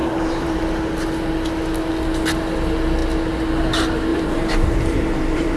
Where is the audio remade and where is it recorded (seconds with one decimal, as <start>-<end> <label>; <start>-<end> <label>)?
0.0-0.6 remade; 0.6-4.1 recorded; 4.1-5.6 remade